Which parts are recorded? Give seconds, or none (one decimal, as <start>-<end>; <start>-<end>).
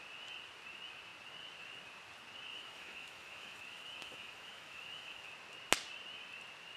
0.0-2.5; 5.3-6.8